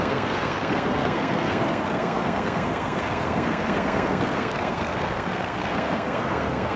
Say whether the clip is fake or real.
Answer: fake